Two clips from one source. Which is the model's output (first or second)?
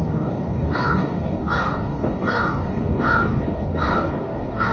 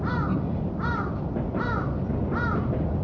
first